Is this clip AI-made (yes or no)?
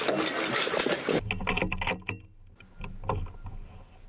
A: no